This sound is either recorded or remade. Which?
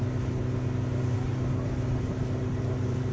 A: recorded